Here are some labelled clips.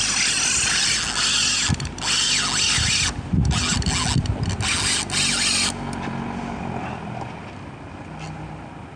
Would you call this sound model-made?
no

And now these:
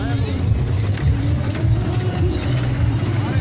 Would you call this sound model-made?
no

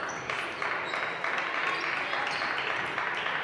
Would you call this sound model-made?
no